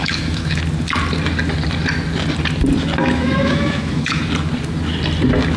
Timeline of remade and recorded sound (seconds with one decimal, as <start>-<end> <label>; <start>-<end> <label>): 0.0-0.6 remade; 0.6-3.0 recorded; 3.0-4.2 remade; 4.2-5.6 recorded